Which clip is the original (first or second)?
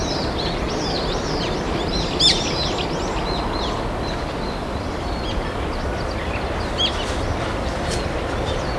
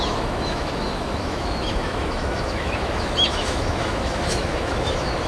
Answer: first